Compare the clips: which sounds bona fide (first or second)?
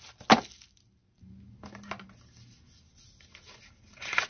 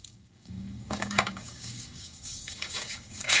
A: first